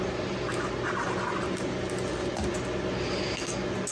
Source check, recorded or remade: recorded